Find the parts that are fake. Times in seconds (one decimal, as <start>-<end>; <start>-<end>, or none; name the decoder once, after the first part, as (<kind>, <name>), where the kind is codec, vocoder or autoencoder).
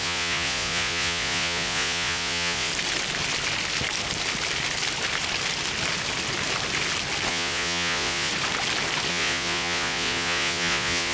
0.0-2.7 (vocoder, Vocos); 7.3-8.3; 9.1-11.1